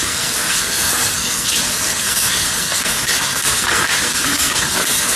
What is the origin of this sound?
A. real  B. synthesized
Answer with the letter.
B